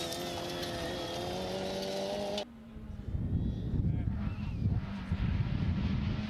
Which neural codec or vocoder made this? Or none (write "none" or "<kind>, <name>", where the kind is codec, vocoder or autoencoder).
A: none